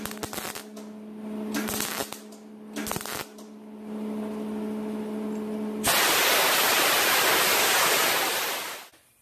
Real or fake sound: real